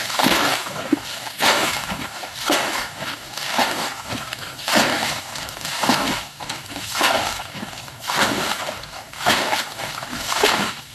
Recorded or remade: remade